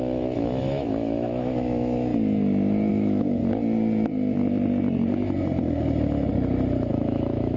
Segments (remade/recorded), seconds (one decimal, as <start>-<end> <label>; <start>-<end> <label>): 0.0-2.1 remade; 2.1-2.9 recorded; 2.9-3.4 remade; 3.4-6.9 recorded; 6.9-7.6 remade